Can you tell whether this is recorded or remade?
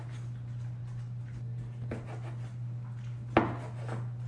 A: recorded